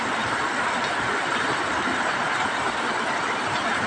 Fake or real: real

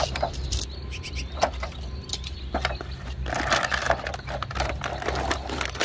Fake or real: real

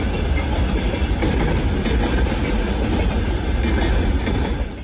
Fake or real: real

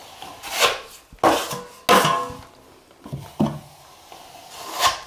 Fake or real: real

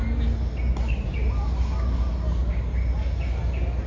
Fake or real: real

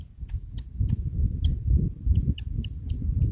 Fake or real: real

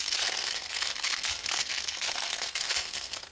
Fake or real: fake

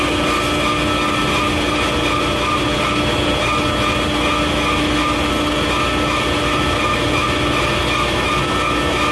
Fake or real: real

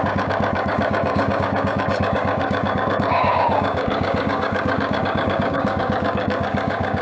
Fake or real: fake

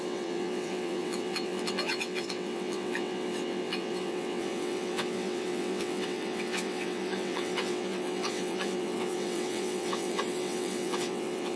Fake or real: fake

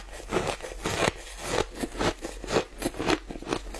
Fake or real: real